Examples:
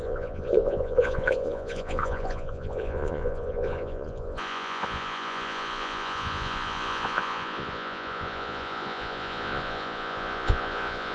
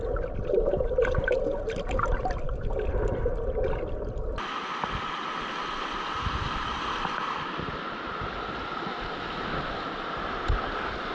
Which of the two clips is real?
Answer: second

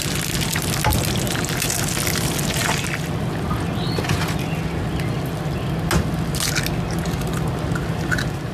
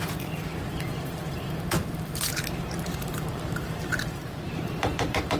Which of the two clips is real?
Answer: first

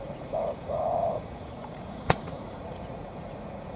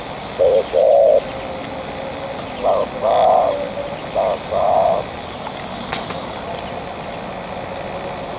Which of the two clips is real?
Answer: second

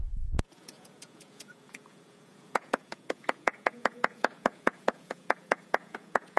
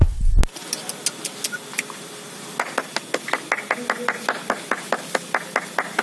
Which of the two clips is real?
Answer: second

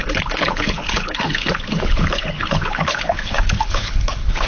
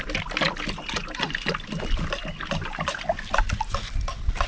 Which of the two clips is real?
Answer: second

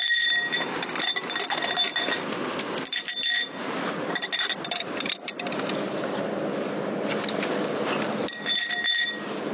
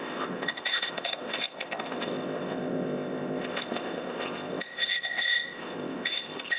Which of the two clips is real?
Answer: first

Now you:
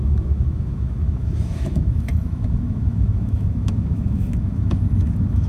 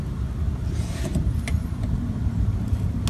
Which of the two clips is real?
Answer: second